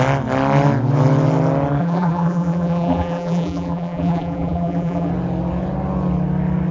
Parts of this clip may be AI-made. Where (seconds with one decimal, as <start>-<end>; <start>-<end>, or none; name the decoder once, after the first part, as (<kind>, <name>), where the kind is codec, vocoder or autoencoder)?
1.8-5.1 (vocoder, BigVGAN v2)